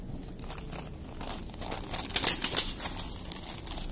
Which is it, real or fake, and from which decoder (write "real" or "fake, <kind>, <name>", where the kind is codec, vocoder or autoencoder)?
real